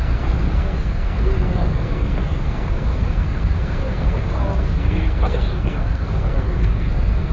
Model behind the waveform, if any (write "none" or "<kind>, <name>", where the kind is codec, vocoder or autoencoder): codec, SNAC